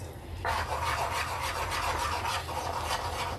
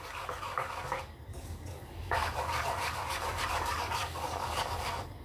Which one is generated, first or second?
second